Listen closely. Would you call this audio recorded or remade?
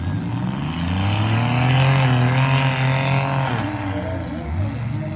recorded